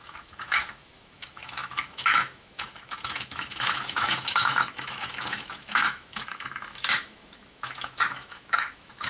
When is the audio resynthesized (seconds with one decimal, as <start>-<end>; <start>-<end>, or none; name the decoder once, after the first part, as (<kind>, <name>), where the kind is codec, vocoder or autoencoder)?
0.0-9.1 (autoencoder, DAC-VAE)